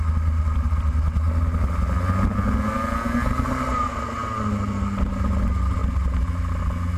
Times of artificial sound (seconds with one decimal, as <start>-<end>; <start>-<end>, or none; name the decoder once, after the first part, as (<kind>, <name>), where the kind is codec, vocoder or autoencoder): none